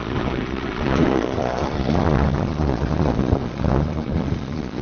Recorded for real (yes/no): no